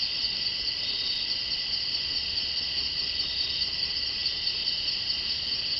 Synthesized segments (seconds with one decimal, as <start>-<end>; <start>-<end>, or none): 4.2-4.8